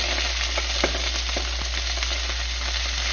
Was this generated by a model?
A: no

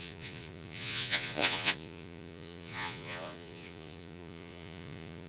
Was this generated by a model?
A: yes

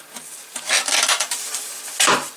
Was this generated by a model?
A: no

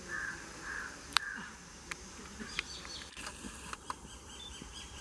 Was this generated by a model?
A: yes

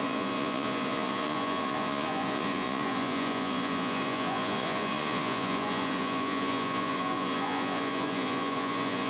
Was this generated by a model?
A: yes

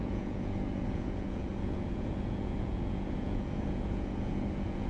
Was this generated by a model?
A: yes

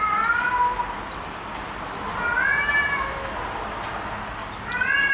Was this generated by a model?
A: no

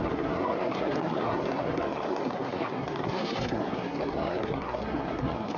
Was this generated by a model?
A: yes